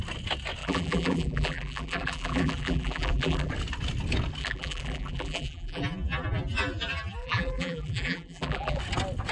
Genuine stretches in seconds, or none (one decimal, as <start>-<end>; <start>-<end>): 0.0-0.6; 3.5-4.4; 5.8-7.2; 8.8-9.3